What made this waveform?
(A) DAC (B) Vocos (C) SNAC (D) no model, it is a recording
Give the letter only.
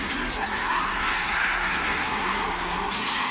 C